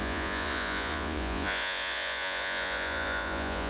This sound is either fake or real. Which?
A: fake